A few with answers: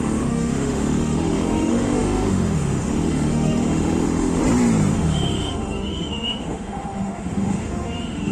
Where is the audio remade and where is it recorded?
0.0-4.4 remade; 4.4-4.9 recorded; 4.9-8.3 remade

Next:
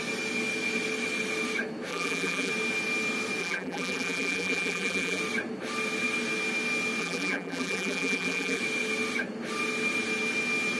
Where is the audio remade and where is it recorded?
0.0-1.9 recorded; 1.9-2.5 remade; 2.5-3.4 recorded; 3.4-5.2 remade; 5.2-7.0 recorded; 7.0-8.6 remade; 8.6-10.8 recorded

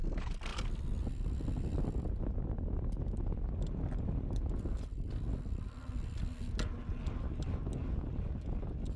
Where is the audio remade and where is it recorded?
0.0-9.0 recorded

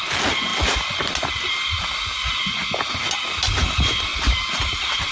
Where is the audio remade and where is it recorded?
0.0-4.1 recorded; 4.1-5.1 remade

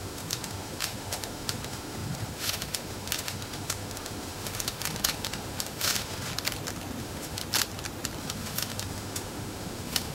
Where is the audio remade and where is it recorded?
0.0-6.3 remade; 6.3-7.0 recorded; 7.0-7.4 remade; 7.4-8.2 recorded; 8.2-10.1 remade

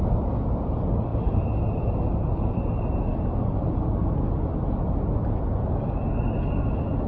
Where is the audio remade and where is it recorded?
0.0-7.1 recorded

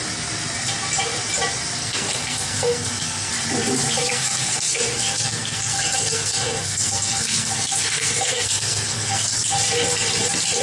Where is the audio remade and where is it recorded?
0.0-1.8 recorded; 1.8-3.3 remade; 3.3-4.0 recorded; 4.0-9.3 remade; 9.3-10.6 recorded